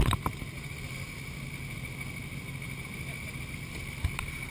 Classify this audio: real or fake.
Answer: real